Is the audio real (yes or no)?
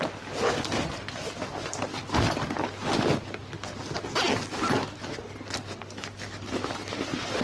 yes